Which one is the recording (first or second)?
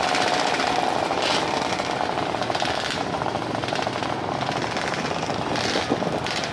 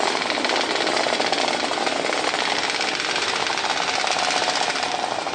second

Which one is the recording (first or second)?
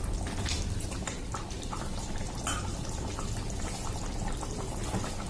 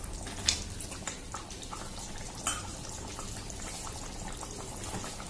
second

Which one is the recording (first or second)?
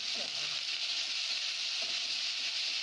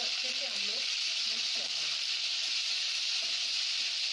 first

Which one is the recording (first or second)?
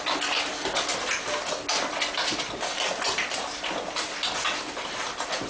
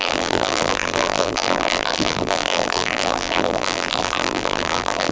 first